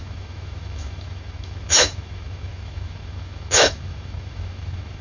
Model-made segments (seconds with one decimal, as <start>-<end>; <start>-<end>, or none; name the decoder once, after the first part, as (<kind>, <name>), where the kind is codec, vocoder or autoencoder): 0.0-5.0 (autoencoder, DAC-VAE)